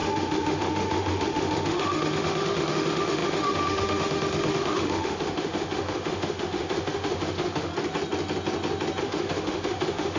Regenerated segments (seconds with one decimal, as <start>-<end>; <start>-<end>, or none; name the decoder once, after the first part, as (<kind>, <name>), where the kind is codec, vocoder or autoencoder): 0.0-7.7 (autoencoder, DAC-VAE); 9.0-10.2